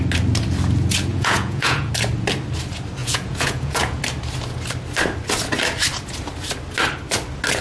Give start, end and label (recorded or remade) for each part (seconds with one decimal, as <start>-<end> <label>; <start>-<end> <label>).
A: 0.0-1.1 recorded; 1.1-1.9 remade; 1.9-3.0 recorded; 3.0-4.0 remade; 4.0-7.6 recorded